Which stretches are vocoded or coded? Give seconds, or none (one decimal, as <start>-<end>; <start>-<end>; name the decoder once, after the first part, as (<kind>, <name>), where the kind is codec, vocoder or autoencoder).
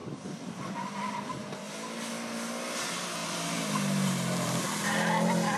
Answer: 0.0-0.7 (vocoder, BigVGAN v2); 3.2-5.6